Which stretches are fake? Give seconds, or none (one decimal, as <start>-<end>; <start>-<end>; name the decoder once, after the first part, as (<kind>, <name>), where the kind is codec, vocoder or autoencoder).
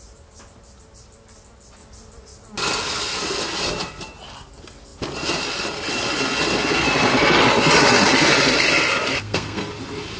9.2-9.7 (codec, SNAC)